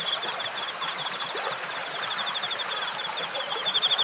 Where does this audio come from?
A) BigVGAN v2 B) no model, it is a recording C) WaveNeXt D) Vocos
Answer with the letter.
A